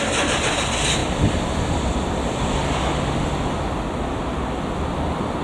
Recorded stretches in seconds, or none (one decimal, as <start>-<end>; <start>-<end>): 0.0-5.4